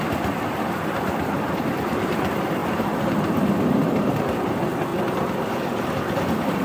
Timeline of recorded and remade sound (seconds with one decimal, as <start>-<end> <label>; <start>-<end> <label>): 0.0-2.6 remade; 2.6-3.3 recorded; 3.3-4.9 remade; 4.9-5.5 recorded; 5.5-6.6 remade